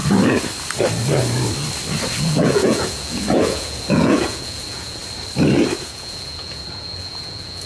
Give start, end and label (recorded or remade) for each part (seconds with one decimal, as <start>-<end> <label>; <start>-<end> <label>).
0.0-2.2 recorded; 2.2-5.0 remade; 5.0-5.8 recorded; 5.8-7.7 remade